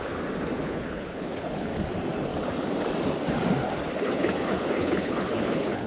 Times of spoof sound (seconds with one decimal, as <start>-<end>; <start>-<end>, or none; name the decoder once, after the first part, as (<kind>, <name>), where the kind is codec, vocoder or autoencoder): 0.6-1.7 (codec, HILCodec); 4.0-5.9